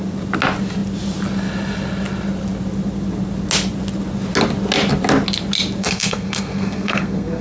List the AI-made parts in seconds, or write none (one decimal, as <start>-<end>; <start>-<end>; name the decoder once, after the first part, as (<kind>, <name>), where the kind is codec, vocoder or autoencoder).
5.8-7.4 (codec, SNAC)